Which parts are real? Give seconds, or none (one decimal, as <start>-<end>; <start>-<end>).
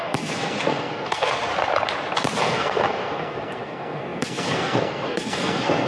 1.5-2.4